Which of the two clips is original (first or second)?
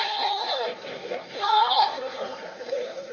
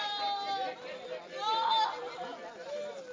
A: second